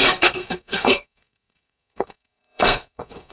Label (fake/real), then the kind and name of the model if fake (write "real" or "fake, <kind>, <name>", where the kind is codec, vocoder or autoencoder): fake, codec, SNAC